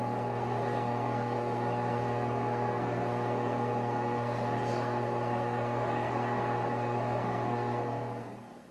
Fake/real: fake